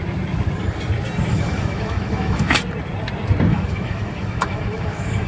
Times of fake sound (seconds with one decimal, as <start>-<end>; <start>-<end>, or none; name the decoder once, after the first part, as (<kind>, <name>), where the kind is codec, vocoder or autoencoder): 1.3-2.6 (autoencoder, DAC-VAE); 3.5-5.3